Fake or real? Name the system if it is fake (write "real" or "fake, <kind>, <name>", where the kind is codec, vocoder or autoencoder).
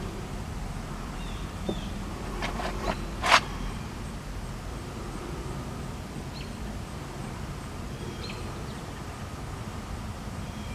fake, vocoder, BigVGAN v2